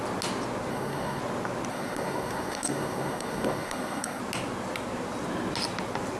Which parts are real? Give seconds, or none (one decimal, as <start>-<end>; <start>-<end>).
0.0-0.7; 1.2-1.7; 4.2-6.2